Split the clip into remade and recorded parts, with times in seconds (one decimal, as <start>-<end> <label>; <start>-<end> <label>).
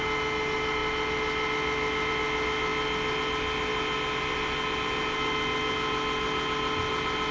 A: 0.0-7.3 recorded